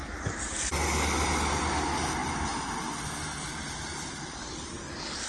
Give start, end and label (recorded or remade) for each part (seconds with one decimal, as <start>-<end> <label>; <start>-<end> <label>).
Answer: 0.0-5.3 recorded